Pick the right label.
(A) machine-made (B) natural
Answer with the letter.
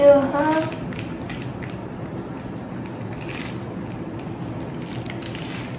B